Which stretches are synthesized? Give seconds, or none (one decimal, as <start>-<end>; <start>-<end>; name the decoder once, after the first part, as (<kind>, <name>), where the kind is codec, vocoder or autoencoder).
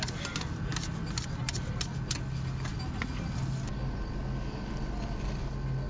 none